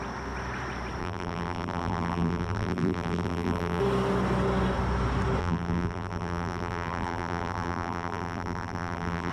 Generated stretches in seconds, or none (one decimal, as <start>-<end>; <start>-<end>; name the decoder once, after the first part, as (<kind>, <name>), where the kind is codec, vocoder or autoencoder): 1.0-3.8 (vocoder, BigVGAN v2); 5.4-9.3